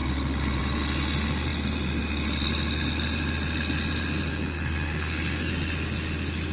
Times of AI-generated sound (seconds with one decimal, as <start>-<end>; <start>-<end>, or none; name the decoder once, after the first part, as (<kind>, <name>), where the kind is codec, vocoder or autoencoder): 4.3-5.5 (codec, SNAC)